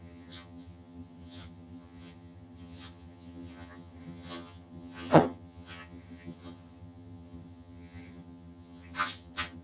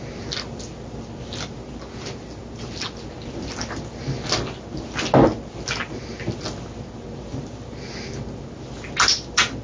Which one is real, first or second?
second